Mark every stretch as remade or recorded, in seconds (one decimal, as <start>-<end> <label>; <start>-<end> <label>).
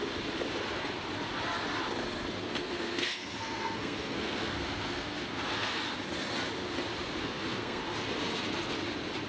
0.0-2.4 recorded; 2.4-5.8 remade; 5.8-7.2 recorded; 7.2-7.8 remade; 7.8-9.3 recorded